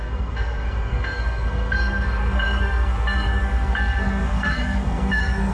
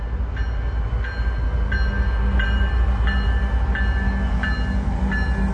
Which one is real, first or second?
second